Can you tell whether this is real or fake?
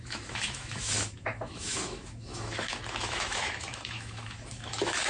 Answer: fake